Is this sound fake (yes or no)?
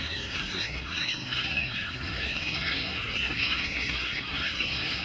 yes